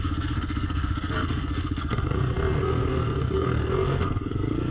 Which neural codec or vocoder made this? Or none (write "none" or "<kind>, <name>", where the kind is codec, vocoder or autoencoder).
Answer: codec, SNAC